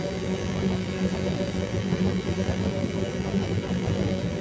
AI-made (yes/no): yes